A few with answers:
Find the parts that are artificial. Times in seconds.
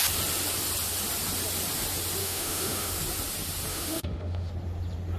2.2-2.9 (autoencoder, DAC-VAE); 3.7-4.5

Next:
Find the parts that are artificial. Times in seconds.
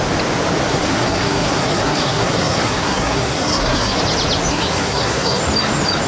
0.7-4.0 (codec, SNAC); 4.5-5.4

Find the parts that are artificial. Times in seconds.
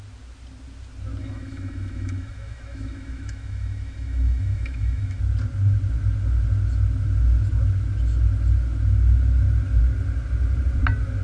1.2-5.2 (autoencoder, DAC-VAE)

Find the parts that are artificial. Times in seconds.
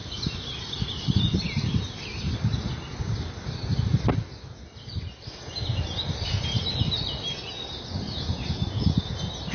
none